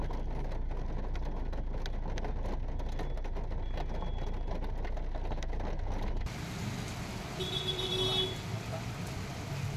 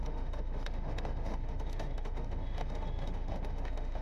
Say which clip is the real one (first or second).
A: first